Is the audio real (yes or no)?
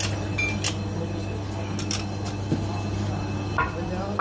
yes